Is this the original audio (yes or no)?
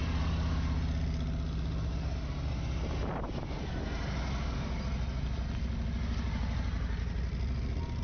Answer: yes